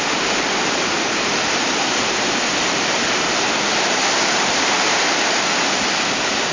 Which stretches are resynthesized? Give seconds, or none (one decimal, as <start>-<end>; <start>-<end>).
1.3-5.2